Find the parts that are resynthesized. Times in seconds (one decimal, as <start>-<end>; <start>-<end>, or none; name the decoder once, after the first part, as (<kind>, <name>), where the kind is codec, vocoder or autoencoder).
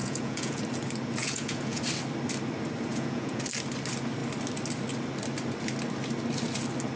0.0-0.6 (vocoder, Vocos); 1.2-1.8; 2.9-3.4